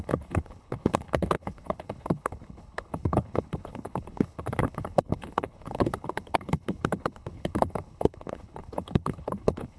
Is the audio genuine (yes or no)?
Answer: no